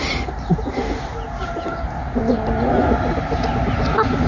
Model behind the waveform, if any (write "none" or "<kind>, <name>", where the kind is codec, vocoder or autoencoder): none